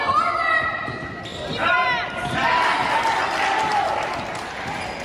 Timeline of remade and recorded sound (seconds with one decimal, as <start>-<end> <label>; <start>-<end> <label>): 0.0-5.0 recorded

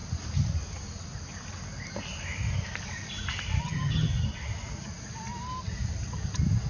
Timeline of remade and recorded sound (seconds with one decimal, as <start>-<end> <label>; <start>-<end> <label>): 0.0-3.6 recorded; 3.6-4.1 remade; 4.1-6.7 recorded

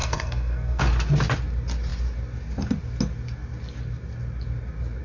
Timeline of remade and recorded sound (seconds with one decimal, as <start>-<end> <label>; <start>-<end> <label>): 0.0-0.8 remade; 0.8-5.0 recorded

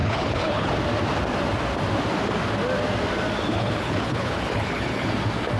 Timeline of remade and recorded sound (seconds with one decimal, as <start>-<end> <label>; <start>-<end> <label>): 0.0-0.7 remade; 0.7-3.5 recorded; 3.5-5.1 remade; 5.1-5.6 recorded